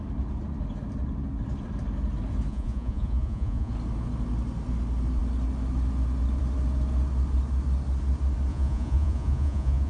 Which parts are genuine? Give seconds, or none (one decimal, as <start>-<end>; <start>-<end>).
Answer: 0.0-2.5; 3.7-8.5